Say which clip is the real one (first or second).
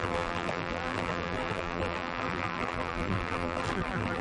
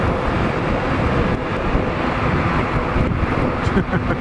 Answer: second